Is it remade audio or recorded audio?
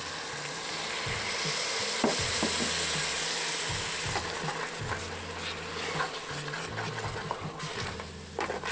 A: recorded